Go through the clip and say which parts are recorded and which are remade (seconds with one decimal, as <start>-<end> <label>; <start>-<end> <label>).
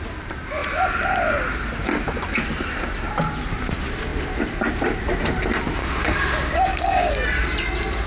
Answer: 0.0-5.8 recorded; 5.8-7.1 remade; 7.1-8.1 recorded